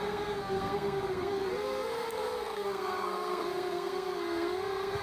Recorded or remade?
remade